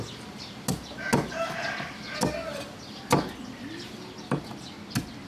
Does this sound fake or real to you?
real